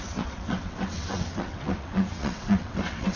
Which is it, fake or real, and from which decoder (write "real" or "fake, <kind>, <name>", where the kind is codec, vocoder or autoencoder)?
fake, vocoder, WaveNeXt